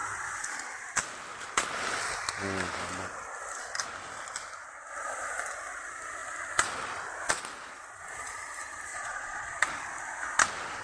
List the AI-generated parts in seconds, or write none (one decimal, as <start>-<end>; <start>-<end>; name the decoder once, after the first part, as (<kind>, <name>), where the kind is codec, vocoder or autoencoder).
8.9-9.6 (vocoder, Vocos)